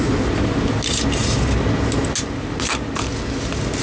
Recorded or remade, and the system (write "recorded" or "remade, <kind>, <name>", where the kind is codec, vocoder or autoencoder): recorded